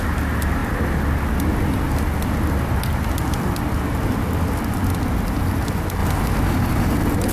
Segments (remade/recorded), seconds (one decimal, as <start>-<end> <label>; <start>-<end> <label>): 0.0-7.3 recorded